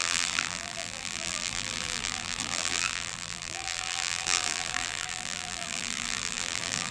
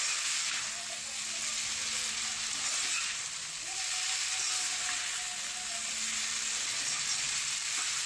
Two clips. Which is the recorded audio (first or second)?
second